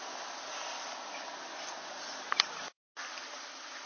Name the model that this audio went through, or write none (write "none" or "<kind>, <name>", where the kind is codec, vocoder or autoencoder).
none